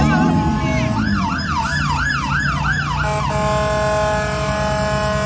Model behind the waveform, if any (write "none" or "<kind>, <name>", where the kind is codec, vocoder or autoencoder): none